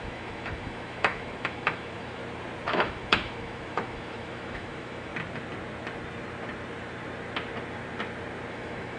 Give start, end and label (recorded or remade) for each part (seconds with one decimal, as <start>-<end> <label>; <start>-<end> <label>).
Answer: 0.0-2.2 remade; 2.2-2.7 recorded; 2.7-5.1 remade; 5.1-8.5 recorded; 8.5-9.0 remade

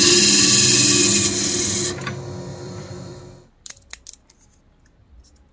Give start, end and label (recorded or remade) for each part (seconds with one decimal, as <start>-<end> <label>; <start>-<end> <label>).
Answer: 0.0-2.5 recorded; 2.5-3.2 remade; 3.2-5.5 recorded

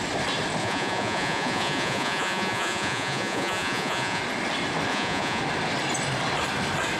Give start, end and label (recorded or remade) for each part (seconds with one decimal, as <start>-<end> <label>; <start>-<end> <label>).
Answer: 0.0-0.6 recorded; 0.6-4.2 remade; 4.2-4.9 recorded; 4.9-5.4 remade; 5.4-7.0 recorded

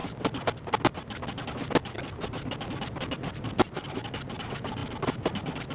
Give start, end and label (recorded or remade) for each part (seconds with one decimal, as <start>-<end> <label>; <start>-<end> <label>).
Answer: 0.0-5.7 recorded

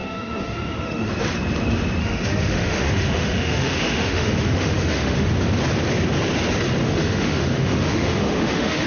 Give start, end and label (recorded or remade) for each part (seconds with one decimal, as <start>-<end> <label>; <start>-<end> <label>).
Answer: 0.0-1.1 remade; 1.1-2.0 recorded; 2.0-5.3 remade; 5.3-6.8 recorded; 6.8-8.9 remade

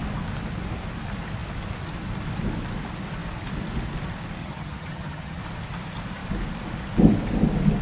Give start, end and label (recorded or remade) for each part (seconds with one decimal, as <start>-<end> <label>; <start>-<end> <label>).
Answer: 0.0-4.4 recorded; 4.4-5.4 remade; 5.4-7.8 recorded

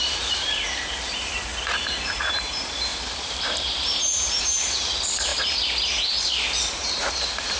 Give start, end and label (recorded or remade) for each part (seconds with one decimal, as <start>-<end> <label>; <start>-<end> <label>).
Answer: 0.0-1.5 remade; 1.5-2.0 recorded; 2.0-5.3 remade; 5.3-6.7 recorded; 6.7-7.6 remade

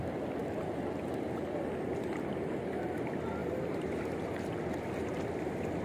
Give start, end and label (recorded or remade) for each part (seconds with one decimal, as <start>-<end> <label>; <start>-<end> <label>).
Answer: 0.0-3.4 recorded; 3.4-4.6 remade; 4.6-5.8 recorded